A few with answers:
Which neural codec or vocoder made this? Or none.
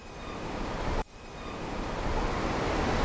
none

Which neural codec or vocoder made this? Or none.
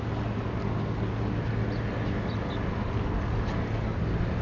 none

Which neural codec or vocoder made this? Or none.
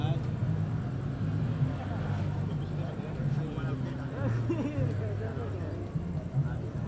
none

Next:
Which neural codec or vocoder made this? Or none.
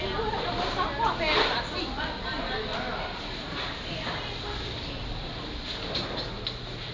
none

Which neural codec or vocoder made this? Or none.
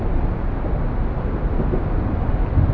none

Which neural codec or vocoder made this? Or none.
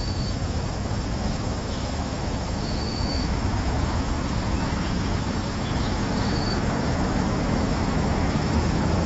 autoencoder, DAC-VAE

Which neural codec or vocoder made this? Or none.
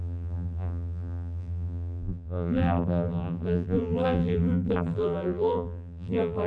vocoder, BigVGAN v2